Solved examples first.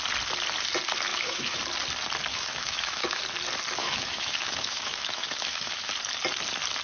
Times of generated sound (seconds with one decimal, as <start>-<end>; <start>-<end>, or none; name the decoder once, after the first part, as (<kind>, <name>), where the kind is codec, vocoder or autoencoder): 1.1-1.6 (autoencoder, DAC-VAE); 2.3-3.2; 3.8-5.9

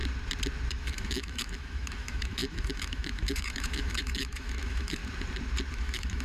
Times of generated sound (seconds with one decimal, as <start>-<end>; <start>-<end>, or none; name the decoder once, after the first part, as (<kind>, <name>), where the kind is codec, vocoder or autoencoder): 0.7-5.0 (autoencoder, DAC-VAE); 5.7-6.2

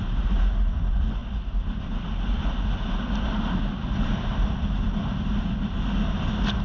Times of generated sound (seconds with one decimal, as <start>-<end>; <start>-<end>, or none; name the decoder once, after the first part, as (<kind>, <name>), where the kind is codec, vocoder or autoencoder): none

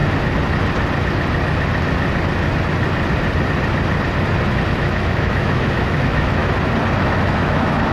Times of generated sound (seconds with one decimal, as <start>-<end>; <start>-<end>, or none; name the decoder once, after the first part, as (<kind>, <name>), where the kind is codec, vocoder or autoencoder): 4.7-6.4 (autoencoder, DAC-VAE); 7.0-7.9

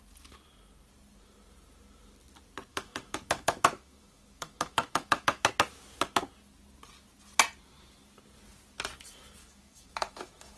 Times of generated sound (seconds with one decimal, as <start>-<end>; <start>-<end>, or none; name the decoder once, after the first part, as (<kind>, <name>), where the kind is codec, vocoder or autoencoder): 2.7-5.5 (autoencoder, DAC-VAE); 9.4-10.6

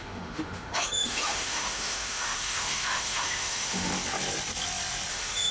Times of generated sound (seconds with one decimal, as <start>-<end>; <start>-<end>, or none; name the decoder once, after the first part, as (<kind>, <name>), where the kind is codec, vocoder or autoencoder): 0.0-3.9 (autoencoder, DAC-VAE); 5.1-5.5